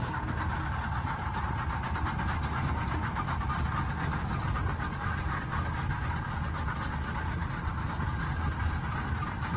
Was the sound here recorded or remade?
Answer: recorded